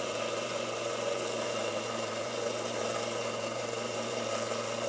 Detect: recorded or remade remade